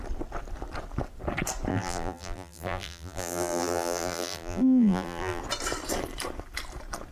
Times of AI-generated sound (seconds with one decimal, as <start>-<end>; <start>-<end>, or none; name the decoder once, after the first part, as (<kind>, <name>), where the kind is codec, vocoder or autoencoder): 1.7-5.4 (vocoder, BigVGAN v2)